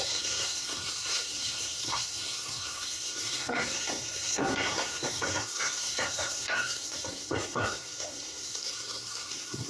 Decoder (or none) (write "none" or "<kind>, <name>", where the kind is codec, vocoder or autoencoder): codec, SNAC